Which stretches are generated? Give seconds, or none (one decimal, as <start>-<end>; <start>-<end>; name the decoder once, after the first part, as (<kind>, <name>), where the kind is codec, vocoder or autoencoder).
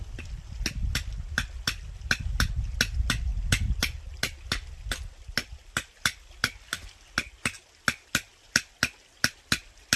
none